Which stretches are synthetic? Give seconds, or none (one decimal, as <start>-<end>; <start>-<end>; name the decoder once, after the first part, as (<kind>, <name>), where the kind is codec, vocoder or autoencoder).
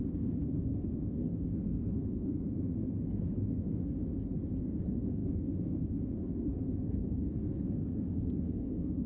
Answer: 0.0-4.0 (codec, SNAC); 4.6-9.1